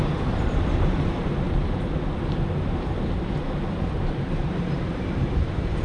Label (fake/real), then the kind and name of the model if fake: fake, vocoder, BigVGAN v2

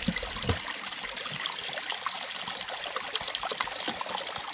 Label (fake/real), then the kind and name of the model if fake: real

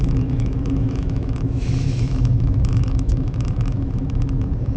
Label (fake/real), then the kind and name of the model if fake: fake, autoencoder, DAC-VAE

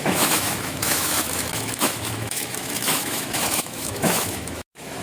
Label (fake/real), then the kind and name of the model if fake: fake, autoencoder, DAC-VAE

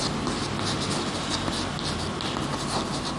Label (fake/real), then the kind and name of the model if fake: real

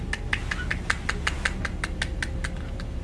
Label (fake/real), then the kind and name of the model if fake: real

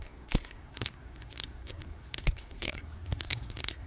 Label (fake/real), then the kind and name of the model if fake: fake, codec, SNAC